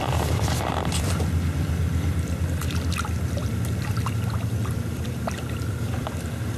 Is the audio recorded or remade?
remade